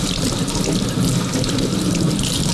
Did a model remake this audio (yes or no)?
no